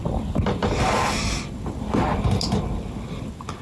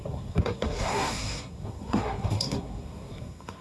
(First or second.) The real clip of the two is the first